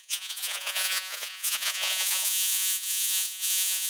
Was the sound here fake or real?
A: fake